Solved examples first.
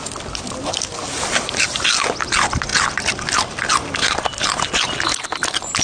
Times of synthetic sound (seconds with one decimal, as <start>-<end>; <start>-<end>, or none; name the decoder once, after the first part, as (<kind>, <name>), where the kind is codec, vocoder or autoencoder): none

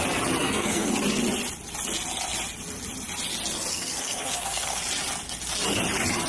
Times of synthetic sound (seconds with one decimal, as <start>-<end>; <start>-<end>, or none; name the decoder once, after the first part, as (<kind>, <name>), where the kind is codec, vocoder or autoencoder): 0.4-0.9 (codec, SNAC); 3.7-4.8

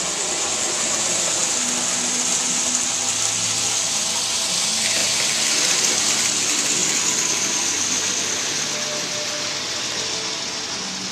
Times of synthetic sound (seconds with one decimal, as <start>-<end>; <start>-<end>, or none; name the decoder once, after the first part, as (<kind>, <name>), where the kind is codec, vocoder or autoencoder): none

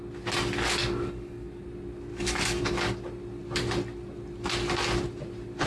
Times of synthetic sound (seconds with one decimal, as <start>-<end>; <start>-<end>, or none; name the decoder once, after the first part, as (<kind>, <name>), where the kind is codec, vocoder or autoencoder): 0.8-1.6 (codec, DAC); 2.1-2.6